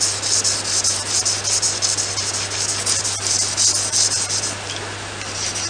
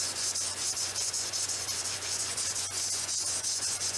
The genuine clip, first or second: first